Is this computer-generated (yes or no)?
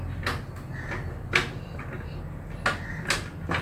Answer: no